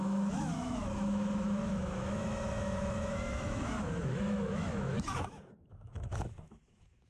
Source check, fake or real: fake